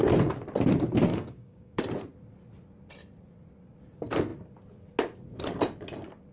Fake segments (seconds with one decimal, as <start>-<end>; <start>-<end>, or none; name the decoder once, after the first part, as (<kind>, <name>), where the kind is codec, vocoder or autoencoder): 1.1-1.8 (codec, DAC)